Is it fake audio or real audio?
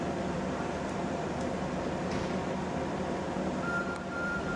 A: fake